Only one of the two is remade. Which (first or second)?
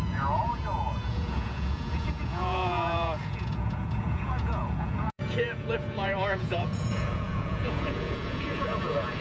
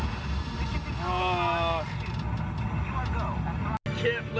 first